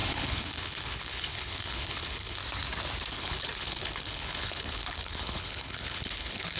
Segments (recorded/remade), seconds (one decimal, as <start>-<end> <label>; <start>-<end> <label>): 0.0-2.4 remade; 2.4-3.1 recorded; 3.1-6.6 remade